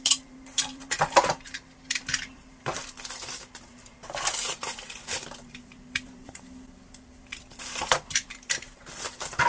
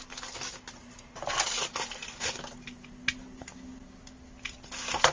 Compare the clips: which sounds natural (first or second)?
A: second